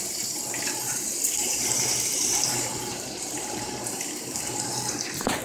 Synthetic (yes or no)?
yes